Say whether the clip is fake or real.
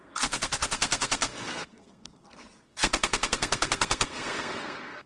fake